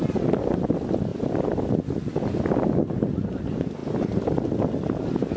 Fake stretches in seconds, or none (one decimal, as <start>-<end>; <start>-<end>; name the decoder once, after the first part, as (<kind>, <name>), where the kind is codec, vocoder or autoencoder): 1.1-1.7 (vocoder, BigVGAN v2)